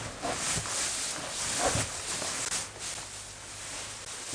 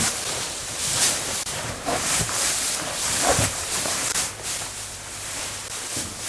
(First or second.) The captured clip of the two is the first